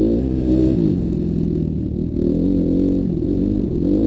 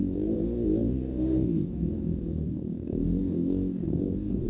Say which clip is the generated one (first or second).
second